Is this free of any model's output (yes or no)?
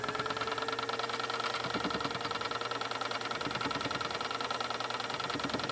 yes